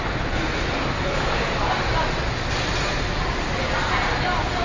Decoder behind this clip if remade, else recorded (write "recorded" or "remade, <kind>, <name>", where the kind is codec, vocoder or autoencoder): recorded